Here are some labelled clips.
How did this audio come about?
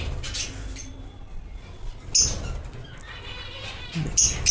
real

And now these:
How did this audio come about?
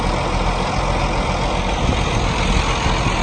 real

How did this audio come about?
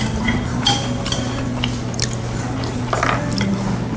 real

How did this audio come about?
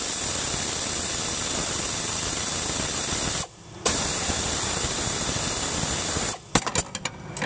real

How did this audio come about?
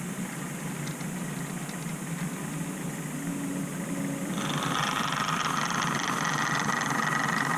real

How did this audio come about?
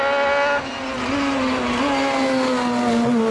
real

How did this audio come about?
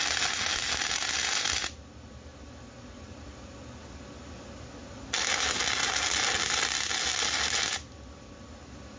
real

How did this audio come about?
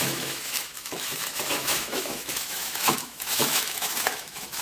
fake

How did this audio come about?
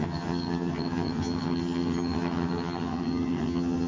fake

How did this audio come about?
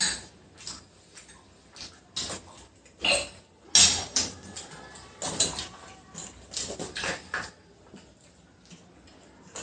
real